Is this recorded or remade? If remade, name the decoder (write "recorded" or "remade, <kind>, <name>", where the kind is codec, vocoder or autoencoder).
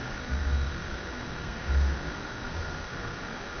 remade, codec, SNAC